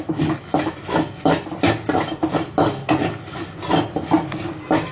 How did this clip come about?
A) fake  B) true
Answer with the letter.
B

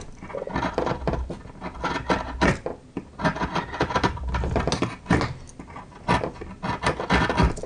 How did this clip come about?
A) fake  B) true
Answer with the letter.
B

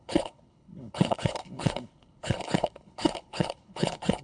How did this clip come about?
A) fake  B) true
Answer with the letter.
A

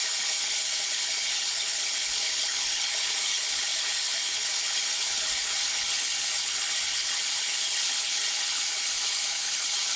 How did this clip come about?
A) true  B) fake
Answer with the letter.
B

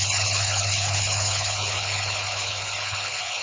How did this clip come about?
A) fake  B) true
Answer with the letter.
A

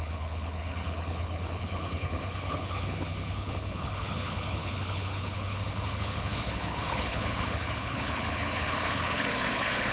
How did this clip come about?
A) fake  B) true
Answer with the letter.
A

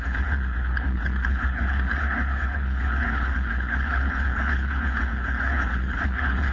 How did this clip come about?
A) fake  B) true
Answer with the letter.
A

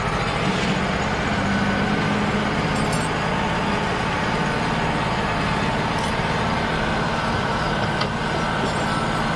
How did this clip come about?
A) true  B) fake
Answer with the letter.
A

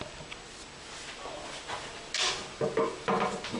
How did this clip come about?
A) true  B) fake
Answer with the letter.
A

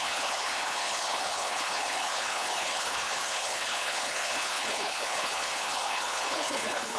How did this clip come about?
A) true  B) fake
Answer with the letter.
B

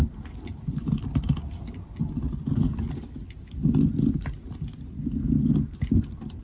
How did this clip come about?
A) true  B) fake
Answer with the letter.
A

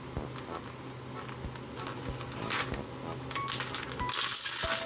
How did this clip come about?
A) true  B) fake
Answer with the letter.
A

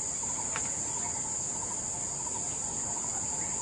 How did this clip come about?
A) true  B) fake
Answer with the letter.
A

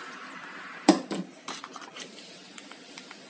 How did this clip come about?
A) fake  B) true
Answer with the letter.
B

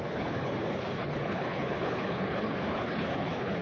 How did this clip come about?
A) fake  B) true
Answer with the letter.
A